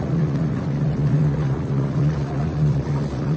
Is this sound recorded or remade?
remade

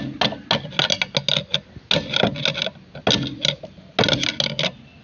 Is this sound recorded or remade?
recorded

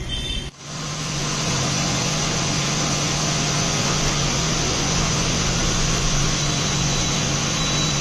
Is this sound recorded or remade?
remade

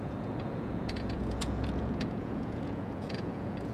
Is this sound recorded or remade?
remade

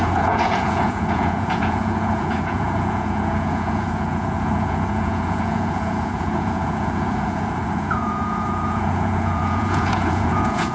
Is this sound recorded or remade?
remade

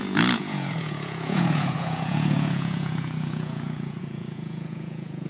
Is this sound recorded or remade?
remade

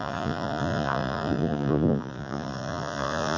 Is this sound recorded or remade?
remade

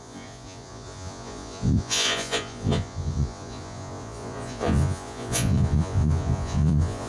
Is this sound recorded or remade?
remade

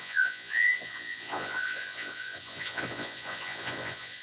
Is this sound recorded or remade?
remade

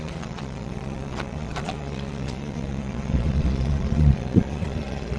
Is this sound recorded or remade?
remade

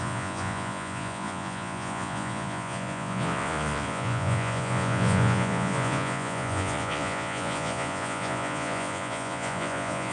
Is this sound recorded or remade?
remade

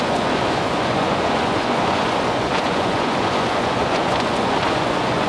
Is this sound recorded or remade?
remade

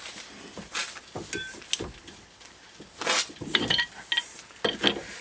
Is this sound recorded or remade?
recorded